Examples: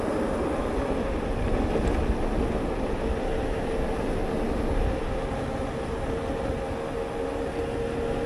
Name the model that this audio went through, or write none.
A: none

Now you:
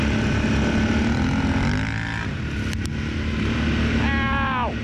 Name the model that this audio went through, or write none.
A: none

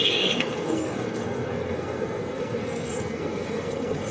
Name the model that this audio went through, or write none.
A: codec, SNAC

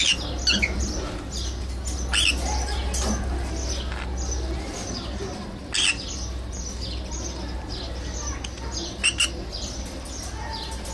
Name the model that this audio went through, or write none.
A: none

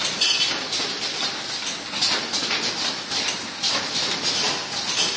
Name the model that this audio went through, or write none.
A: none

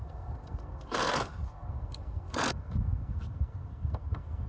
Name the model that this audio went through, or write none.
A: codec, SNAC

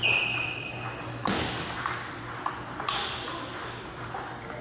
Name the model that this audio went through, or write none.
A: none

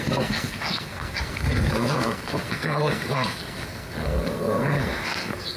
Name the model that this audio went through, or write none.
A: codec, SNAC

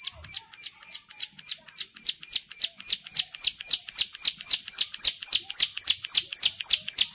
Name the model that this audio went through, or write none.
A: none